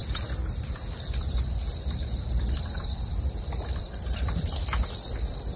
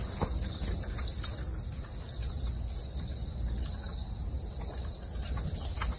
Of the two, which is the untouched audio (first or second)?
second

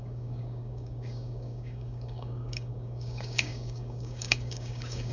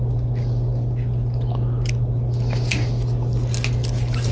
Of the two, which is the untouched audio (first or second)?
second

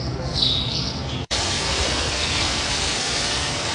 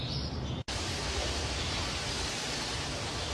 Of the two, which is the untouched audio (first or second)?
second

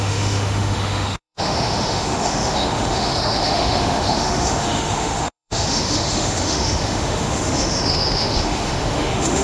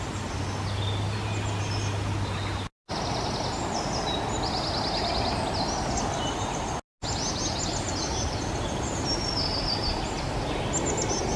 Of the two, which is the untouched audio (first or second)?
second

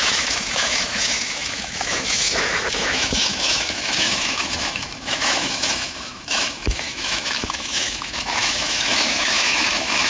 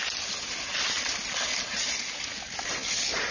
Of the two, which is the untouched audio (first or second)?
second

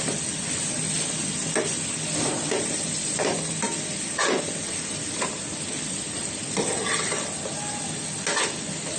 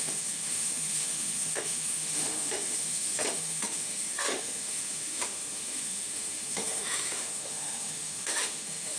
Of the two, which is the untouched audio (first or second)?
first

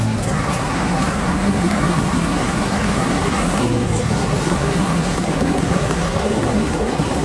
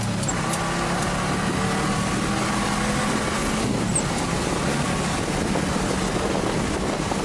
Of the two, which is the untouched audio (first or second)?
second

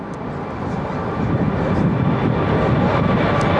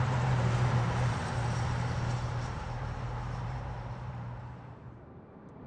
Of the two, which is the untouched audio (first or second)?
first